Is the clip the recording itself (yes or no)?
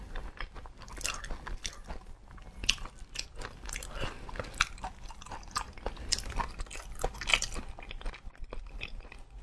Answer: yes